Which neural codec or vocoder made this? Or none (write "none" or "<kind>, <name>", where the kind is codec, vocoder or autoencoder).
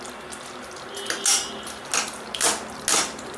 none